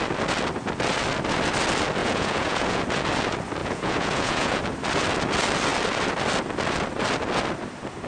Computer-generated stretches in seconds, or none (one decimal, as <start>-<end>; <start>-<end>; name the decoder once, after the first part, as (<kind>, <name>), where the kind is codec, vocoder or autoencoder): 2.0-2.8 (vocoder, Vocos); 3.6-4.6